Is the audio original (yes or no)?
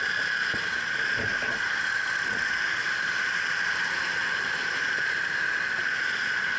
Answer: yes